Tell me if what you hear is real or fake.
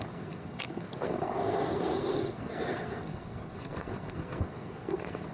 fake